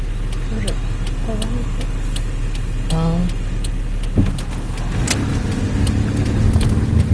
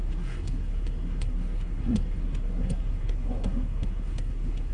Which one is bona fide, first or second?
first